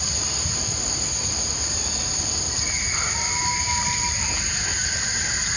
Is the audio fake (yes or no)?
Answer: no